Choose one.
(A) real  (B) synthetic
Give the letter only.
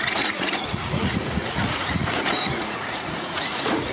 B